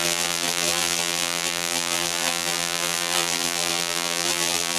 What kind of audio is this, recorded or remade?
remade